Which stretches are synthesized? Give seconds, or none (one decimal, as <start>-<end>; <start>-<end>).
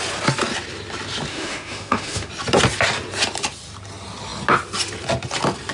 1.3-2.3